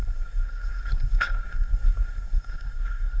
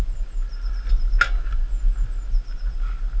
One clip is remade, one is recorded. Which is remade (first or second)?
first